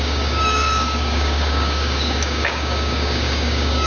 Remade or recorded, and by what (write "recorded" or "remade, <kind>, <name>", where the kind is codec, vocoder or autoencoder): remade, codec, DAC